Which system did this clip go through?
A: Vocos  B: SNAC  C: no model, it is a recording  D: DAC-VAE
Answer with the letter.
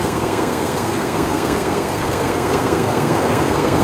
B